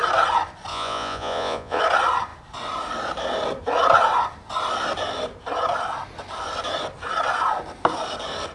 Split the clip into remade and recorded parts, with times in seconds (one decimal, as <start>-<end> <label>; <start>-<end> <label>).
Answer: 0.0-0.7 recorded; 0.7-1.8 remade; 1.8-8.5 recorded

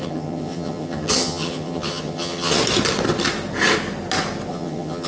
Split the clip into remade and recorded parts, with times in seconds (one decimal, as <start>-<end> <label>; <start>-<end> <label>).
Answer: 0.0-2.6 remade; 2.6-4.5 recorded; 4.5-5.1 remade

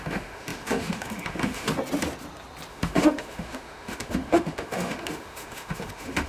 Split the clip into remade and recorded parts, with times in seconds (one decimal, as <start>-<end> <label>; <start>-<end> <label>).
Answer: 0.0-1.7 remade; 1.7-2.7 recorded; 2.7-6.3 remade

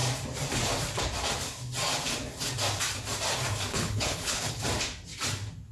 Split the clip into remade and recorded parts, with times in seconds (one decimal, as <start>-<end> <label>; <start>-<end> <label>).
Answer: 0.0-3.7 recorded; 3.7-4.6 remade; 4.6-5.7 recorded

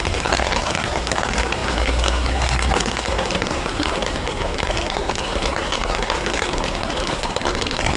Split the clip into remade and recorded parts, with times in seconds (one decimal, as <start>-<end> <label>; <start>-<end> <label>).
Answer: 0.0-8.0 remade

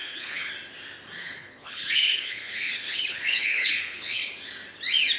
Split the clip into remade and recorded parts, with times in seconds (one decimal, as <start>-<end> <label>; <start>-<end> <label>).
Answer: 0.0-0.5 remade; 0.5-1.2 recorded; 1.2-4.3 remade; 4.3-5.2 recorded

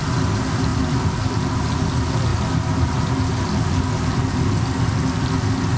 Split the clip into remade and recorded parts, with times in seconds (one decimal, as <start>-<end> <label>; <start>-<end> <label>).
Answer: 0.0-0.7 recorded; 0.7-1.3 remade; 1.3-2.3 recorded; 2.3-3.7 remade; 3.7-5.8 recorded

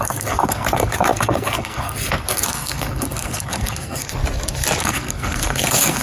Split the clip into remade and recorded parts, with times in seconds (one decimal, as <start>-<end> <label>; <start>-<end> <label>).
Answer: 0.0-4.2 remade; 4.2-4.8 recorded; 4.8-6.0 remade